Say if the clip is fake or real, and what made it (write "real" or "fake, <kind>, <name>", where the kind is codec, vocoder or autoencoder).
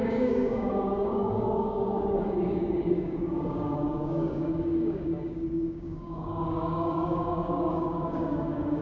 fake, codec, DAC